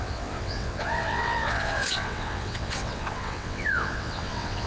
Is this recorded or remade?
remade